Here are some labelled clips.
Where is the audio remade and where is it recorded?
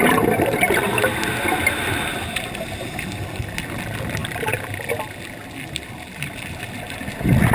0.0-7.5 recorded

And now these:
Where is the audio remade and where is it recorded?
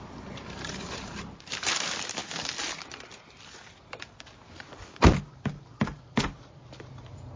0.0-2.2 remade; 2.2-4.5 recorded; 4.5-7.4 remade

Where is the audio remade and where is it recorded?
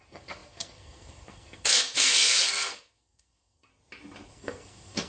0.0-3.7 remade; 3.7-4.3 recorded; 4.3-5.1 remade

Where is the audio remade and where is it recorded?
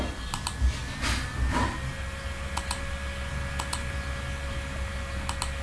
0.0-5.6 recorded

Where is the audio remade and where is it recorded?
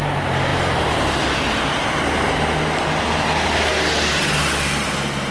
0.0-5.3 recorded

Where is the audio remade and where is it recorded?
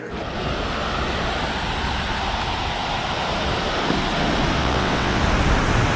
0.0-4.6 recorded; 4.6-5.2 remade; 5.2-6.0 recorded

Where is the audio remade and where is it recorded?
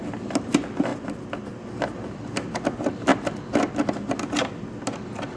0.0-5.4 recorded